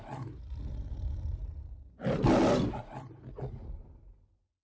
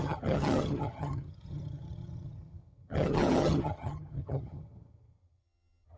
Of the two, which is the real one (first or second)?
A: first